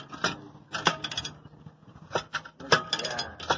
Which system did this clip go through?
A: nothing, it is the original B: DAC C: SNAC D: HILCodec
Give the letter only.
A